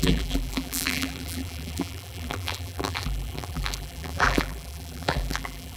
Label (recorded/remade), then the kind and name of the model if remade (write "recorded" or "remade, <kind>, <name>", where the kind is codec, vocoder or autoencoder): remade, vocoder, BigVGAN v2